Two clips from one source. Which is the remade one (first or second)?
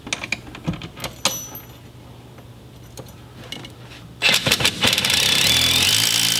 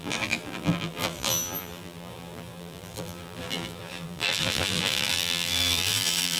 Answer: second